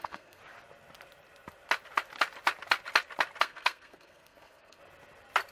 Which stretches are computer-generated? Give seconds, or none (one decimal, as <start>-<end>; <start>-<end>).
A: 0.0-0.4; 3.4-4.8